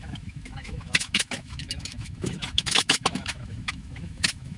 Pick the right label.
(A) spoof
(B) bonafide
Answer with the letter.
A